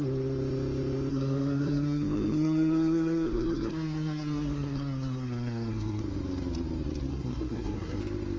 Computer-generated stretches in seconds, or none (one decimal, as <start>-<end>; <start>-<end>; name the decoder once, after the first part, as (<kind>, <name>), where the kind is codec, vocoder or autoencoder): 1.1-6.0 (codec, SNAC); 7.1-8.0